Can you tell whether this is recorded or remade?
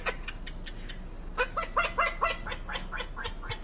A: recorded